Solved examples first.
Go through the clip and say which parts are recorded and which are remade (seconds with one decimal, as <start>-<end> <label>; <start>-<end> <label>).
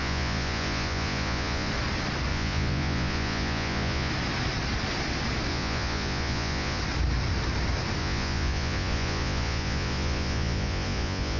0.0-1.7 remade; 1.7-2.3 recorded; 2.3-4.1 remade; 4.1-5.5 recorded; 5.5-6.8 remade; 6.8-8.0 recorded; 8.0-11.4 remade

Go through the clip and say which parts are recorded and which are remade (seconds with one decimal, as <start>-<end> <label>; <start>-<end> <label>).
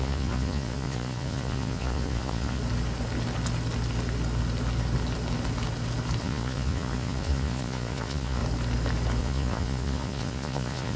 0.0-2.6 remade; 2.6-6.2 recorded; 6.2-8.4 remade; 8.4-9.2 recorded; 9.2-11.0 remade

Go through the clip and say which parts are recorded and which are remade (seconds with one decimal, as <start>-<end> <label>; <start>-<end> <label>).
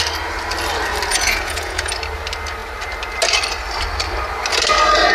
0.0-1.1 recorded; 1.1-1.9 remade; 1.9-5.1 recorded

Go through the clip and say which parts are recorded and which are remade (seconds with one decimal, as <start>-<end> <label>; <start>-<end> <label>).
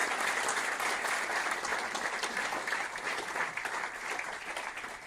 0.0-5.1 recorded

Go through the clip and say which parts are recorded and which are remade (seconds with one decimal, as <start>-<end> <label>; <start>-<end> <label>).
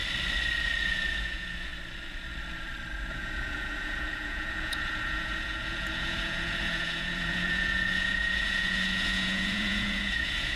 0.0-0.8 recorded; 0.8-1.7 remade; 1.7-3.1 recorded; 3.1-10.6 remade